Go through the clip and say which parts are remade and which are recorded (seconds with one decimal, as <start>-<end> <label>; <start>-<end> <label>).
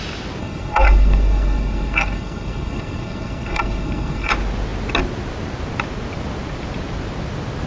0.0-0.4 recorded; 0.4-4.3 remade; 4.3-7.7 recorded